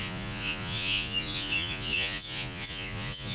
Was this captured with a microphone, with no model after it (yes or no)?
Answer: no